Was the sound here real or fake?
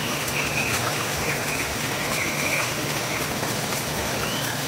fake